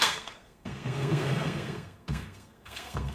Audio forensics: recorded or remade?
remade